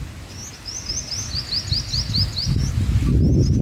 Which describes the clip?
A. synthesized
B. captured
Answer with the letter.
B